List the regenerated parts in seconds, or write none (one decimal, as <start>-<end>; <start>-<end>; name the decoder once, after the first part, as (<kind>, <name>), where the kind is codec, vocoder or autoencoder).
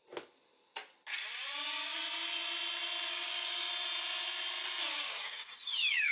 3.1-3.7 (codec, DAC); 4.9-6.1